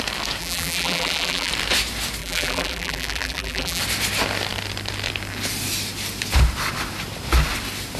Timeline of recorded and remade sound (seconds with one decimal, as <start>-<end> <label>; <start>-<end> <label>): 0.0-0.4 recorded; 0.4-1.5 remade; 1.5-2.2 recorded; 2.2-3.8 remade; 3.8-8.0 recorded